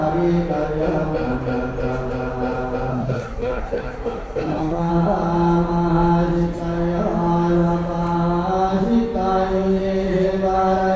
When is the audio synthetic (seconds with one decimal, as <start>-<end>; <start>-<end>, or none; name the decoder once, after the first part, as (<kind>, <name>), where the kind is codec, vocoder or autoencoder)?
2.9-4.9 (codec, SNAC)